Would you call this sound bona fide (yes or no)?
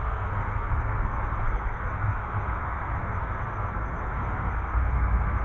no